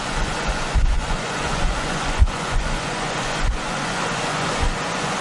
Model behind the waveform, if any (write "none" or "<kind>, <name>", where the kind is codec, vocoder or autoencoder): vocoder, Vocos